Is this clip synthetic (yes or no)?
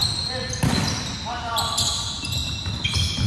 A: no